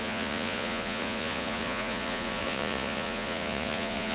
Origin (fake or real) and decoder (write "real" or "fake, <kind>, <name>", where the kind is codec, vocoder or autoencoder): fake, vocoder, Vocos